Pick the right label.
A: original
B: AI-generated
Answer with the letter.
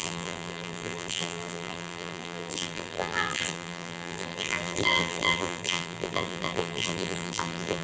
B